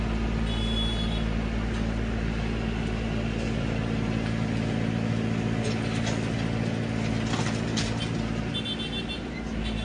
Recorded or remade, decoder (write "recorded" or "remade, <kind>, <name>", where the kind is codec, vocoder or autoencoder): recorded